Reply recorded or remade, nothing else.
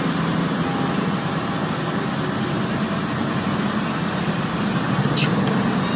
recorded